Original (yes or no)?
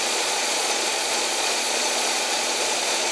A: no